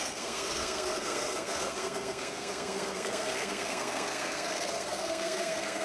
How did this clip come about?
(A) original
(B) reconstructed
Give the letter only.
B